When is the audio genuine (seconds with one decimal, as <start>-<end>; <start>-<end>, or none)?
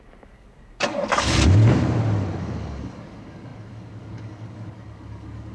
1.6-2.4